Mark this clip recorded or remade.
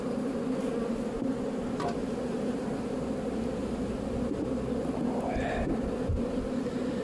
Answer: recorded